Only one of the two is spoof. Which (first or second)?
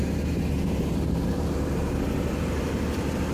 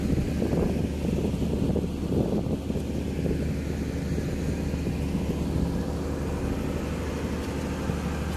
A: first